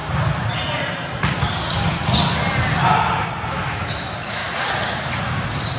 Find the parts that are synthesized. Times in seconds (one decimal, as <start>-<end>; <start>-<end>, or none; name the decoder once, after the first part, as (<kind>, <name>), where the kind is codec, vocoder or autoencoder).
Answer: 3.5-4.4 (autoencoder, DAC-VAE)